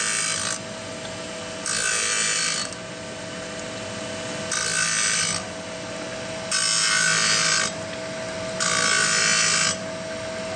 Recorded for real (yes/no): yes